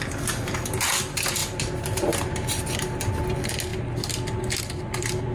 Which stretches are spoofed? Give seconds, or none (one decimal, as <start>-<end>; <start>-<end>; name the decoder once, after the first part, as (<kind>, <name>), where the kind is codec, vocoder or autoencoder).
1.4-3.1 (vocoder, BigVGAN v2)

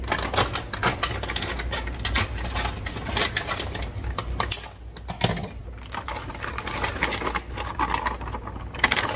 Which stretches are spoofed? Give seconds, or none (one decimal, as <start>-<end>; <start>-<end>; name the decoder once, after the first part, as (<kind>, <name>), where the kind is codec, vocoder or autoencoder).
none